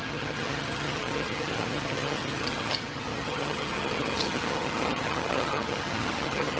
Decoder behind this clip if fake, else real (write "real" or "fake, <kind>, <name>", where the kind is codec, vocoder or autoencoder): fake, vocoder, HiFi-GAN